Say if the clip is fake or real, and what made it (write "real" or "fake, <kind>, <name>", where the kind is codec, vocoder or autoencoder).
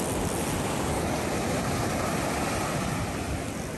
real